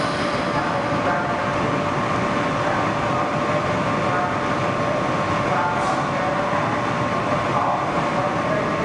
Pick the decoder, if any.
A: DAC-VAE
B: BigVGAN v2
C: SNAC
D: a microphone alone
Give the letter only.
D